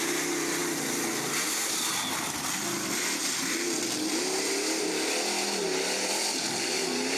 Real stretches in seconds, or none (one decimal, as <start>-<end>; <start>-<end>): 0.0-7.2